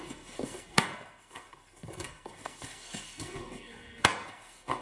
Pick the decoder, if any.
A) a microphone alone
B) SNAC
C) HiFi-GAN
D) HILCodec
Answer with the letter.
B